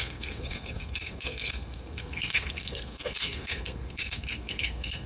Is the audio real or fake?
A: fake